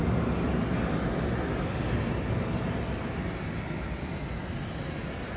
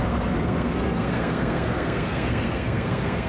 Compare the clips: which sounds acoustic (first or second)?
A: first